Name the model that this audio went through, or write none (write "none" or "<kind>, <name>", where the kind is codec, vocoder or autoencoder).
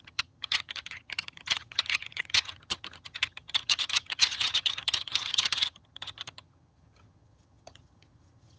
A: vocoder, HiFi-GAN